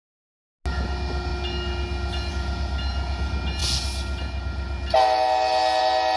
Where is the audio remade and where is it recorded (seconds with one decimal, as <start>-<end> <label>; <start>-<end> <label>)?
0.0-6.2 recorded

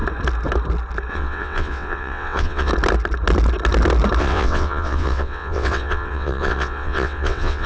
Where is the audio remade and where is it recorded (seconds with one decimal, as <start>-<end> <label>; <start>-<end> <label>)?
0.0-1.1 recorded; 1.1-2.7 remade; 2.7-4.2 recorded; 4.2-7.7 remade